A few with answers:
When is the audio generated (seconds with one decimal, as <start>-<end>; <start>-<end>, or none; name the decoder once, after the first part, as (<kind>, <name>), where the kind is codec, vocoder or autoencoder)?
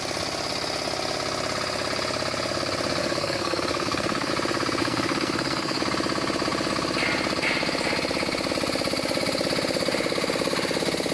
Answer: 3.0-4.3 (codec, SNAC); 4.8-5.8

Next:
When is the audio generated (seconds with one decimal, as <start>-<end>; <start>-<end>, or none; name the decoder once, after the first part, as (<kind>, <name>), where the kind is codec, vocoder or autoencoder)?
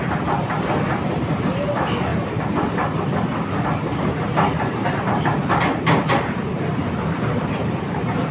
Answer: 0.0-2.1 (vocoder, BigVGAN v2); 4.0-5.4; 6.0-8.3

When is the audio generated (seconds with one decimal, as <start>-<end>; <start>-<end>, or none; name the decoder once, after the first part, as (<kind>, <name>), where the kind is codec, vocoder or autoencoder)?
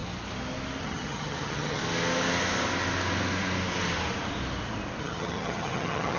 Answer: 0.8-1.8 (vocoder, HiFi-GAN); 5.0-6.2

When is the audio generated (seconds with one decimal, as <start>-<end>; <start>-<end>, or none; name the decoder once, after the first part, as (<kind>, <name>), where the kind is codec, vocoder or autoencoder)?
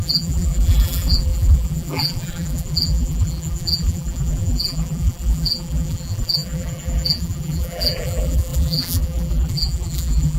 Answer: 0.0-10.4 (vocoder, BigVGAN v2)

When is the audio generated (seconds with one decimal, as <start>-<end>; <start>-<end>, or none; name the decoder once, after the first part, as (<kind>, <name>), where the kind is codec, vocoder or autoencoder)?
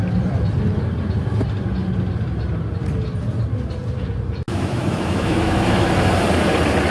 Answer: 4.5-5.9 (autoencoder, DAC-VAE)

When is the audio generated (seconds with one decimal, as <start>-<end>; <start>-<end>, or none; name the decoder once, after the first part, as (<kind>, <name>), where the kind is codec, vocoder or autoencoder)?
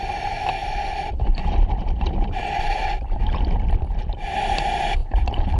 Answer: 0.6-3.8 (vocoder, BigVGAN v2); 5.0-5.6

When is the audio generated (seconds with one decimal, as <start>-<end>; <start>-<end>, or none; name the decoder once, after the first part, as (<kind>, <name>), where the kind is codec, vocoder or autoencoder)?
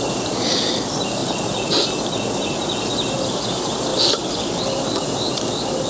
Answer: none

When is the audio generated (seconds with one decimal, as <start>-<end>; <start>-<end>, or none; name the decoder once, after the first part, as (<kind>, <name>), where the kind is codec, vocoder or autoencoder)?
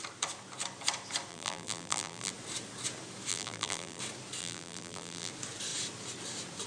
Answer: 1.3-2.3 (vocoder, BigVGAN v2); 3.3-4.0; 4.4-5.3